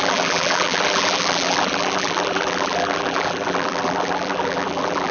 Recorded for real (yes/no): no